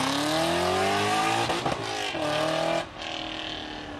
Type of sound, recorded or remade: recorded